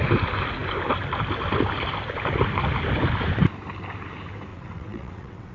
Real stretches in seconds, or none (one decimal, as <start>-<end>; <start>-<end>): 0.0-4.5